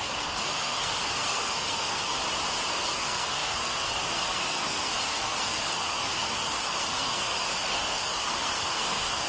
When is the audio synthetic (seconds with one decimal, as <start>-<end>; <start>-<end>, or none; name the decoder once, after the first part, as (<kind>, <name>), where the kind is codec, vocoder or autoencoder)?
0.0-2.2 (codec, SNAC); 2.7-9.3